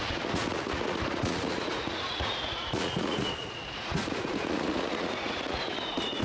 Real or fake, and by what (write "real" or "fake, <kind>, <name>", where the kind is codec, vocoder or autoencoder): fake, vocoder, Vocos